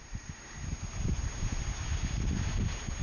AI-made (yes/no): no